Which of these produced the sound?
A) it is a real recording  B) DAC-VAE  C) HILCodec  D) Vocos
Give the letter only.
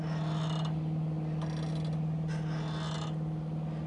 A